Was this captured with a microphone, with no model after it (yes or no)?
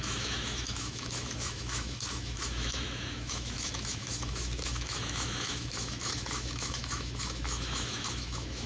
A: no